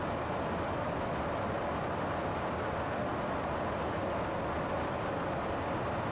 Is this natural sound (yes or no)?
yes